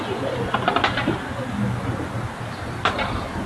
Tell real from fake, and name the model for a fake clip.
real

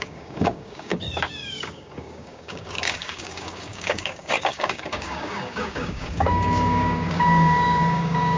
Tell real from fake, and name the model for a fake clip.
fake, codec, DAC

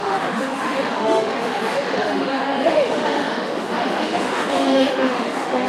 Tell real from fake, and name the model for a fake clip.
fake, autoencoder, DAC-VAE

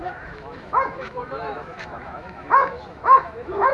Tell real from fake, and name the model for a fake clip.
fake, autoencoder, DAC-VAE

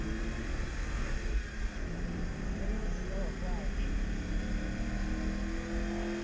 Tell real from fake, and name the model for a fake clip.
real